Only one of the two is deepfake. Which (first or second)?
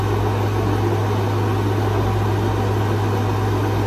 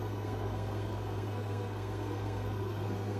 second